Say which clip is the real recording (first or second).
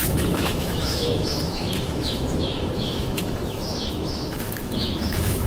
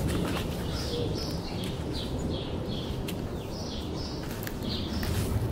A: second